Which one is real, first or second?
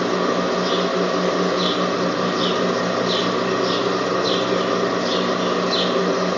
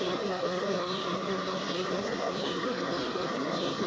first